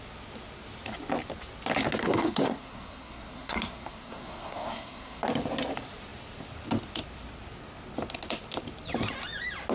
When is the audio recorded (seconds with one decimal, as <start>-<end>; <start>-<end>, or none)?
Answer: 0.0-2.0; 5.2-9.7